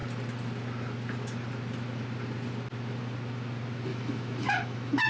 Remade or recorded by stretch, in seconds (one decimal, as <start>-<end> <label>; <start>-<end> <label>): 0.0-3.9 recorded; 3.9-5.1 remade